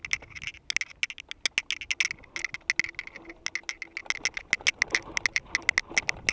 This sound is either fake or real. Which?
real